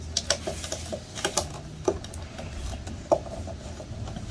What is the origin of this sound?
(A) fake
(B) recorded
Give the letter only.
B